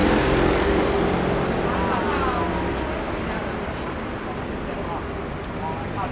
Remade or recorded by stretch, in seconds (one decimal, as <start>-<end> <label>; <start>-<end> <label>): 0.0-6.1 recorded